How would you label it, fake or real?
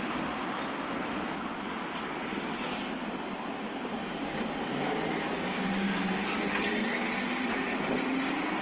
real